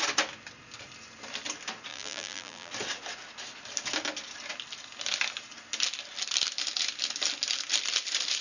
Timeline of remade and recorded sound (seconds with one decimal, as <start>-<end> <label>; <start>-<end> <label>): 0.0-1.9 recorded; 1.9-2.7 remade; 2.7-8.4 recorded